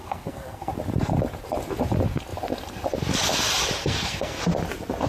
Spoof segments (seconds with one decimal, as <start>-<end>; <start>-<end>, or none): 0.0-0.7; 3.8-4.4